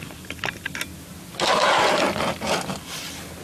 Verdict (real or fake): fake